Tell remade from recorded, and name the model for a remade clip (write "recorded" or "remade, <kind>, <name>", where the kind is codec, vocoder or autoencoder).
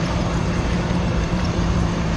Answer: remade, vocoder, BigVGAN v2